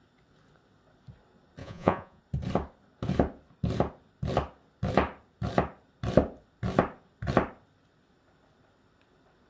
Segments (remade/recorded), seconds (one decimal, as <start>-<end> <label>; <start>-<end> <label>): 0.0-1.6 recorded; 1.6-2.2 remade; 2.2-9.5 recorded